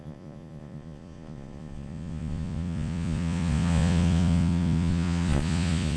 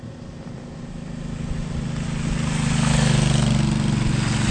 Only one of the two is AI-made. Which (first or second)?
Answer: first